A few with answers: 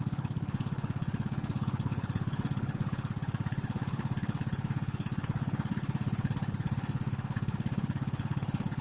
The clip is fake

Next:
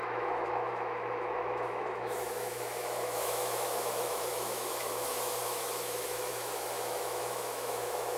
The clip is fake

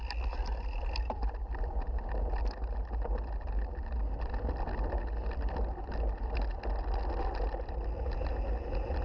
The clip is real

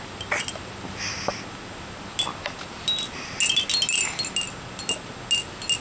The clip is real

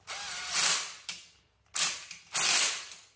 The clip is real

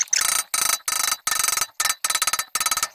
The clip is real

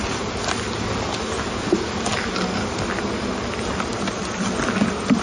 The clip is real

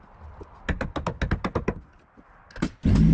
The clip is real